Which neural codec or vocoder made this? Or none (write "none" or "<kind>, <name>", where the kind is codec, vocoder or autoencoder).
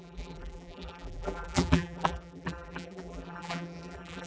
vocoder, BigVGAN v2